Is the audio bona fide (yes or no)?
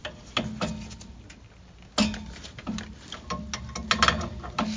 yes